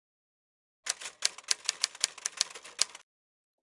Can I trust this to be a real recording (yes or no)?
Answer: yes